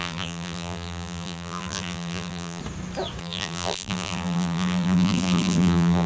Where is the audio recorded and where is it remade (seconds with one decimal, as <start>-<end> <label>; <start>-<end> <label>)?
0.0-2.6 remade; 2.6-3.2 recorded; 3.2-6.1 remade